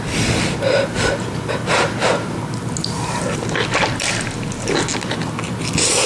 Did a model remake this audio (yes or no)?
no